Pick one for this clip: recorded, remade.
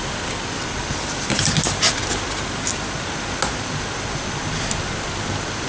recorded